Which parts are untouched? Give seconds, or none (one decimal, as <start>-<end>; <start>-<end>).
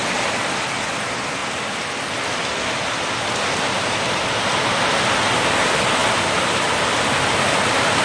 0.0-8.0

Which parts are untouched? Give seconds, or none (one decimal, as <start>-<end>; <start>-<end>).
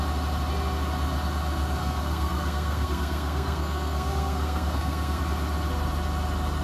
0.0-1.8; 5.2-6.6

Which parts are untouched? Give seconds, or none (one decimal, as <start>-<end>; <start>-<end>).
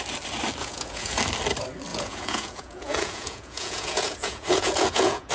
0.0-0.6; 1.2-1.9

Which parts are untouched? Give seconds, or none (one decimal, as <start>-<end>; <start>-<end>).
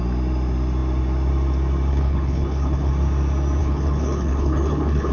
0.0-1.9; 2.9-3.6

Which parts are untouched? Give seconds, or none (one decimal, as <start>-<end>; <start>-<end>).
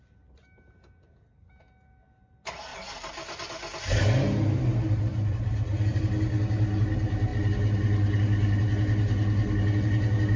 0.0-4.7; 6.0-10.4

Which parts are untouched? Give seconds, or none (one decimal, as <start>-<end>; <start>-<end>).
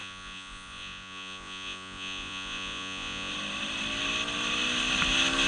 3.3-5.5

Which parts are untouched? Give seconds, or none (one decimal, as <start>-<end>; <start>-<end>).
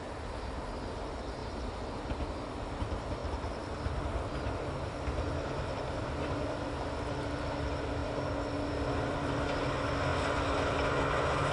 0.0-11.5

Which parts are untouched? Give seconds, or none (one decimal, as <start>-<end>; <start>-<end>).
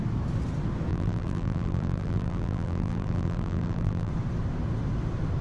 0.0-0.9; 4.1-5.4